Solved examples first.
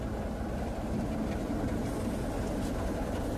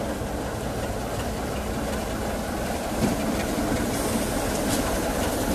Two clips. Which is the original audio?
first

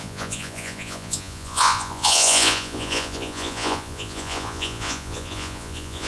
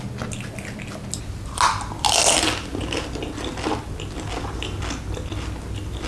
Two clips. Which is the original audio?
second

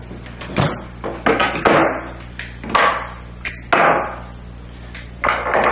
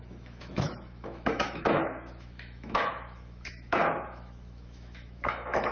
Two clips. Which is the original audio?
first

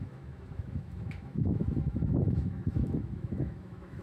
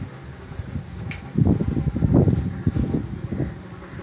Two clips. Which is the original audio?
second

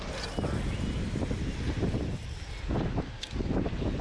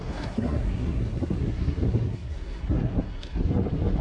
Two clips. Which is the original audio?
first